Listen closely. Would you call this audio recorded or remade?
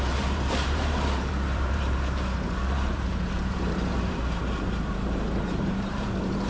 remade